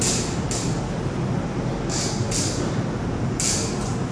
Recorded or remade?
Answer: recorded